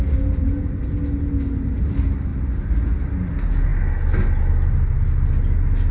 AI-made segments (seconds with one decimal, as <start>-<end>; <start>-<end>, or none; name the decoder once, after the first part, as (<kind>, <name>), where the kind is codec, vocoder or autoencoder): none